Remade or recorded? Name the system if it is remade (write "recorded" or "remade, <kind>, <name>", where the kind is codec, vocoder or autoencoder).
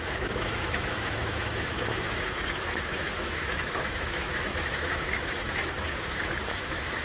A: remade, autoencoder, DAC-VAE